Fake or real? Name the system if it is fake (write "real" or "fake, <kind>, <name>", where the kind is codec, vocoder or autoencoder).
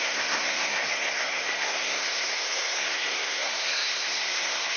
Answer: fake, codec, SNAC